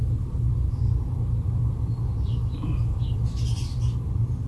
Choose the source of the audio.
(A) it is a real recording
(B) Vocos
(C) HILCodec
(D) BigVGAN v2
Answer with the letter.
A